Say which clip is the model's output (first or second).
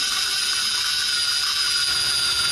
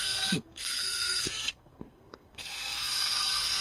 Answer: second